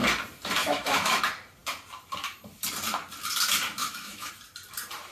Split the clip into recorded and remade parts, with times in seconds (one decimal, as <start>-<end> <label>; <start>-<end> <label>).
0.0-0.6 recorded; 0.6-1.2 remade; 1.2-3.8 recorded; 3.8-4.3 remade; 4.3-5.1 recorded